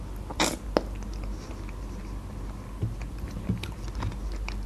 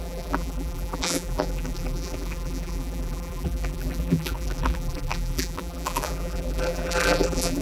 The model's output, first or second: second